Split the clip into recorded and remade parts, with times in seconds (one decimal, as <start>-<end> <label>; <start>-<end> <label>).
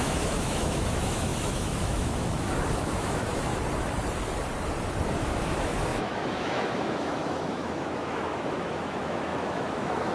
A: 0.0-3.5 remade; 3.5-5.2 recorded; 5.2-10.1 remade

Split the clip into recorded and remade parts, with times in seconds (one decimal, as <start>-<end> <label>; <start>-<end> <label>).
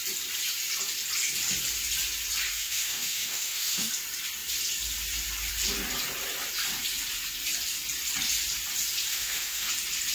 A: 0.0-2.5 recorded; 2.5-3.9 remade; 3.9-9.1 recorded; 9.1-9.7 remade; 9.7-10.1 recorded